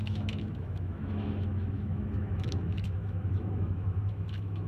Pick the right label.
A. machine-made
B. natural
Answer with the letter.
A